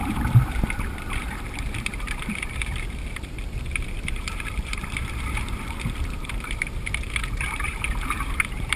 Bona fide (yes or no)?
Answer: no